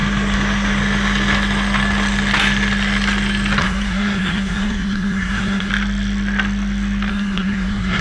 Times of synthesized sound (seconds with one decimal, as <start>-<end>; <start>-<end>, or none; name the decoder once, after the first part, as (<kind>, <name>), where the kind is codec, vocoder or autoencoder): 3.6-5.7 (codec, SNAC); 7.1-8.0